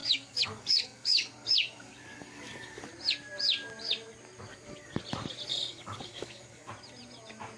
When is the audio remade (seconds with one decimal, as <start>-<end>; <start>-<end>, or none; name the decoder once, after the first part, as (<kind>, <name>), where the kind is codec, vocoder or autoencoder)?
0.0-2.9 (codec, DAC); 4.5-5.0; 5.5-6.7